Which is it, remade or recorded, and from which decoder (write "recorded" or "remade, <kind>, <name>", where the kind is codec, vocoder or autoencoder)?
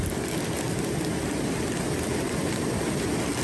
recorded